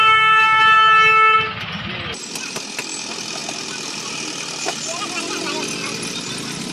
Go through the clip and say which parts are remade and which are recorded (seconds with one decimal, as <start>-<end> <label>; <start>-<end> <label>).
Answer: 0.0-0.6 remade; 0.6-6.7 recorded